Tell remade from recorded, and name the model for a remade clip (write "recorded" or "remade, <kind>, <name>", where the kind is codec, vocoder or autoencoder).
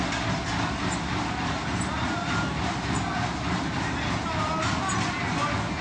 recorded